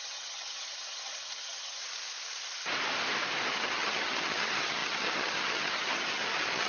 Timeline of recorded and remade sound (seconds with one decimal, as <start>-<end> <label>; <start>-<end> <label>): 0.0-1.8 remade; 1.8-3.5 recorded; 3.5-6.7 remade